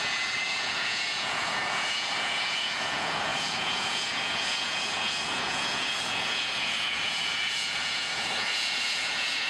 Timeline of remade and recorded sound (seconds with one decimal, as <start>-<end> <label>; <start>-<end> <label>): 0.0-9.5 remade